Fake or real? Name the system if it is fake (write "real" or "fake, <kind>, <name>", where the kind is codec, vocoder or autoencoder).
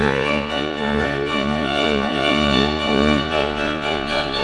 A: fake, vocoder, Vocos